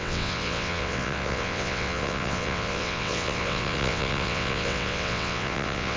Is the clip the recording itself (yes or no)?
no